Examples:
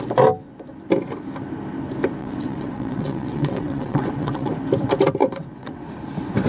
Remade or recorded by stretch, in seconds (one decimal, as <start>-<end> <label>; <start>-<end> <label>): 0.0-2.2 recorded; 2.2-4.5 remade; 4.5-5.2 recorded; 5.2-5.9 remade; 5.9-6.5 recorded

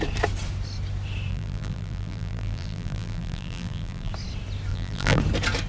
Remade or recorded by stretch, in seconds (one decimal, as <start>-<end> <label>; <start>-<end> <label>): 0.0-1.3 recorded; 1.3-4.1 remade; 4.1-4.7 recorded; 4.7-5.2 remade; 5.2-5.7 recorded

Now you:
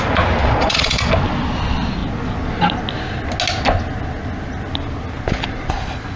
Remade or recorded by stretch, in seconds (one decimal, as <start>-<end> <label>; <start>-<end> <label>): 0.0-0.4 recorded; 0.4-1.1 remade; 1.1-6.2 recorded